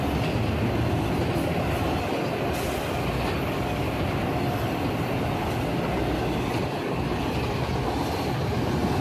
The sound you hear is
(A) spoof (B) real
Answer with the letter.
B